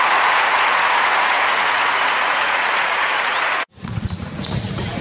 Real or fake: fake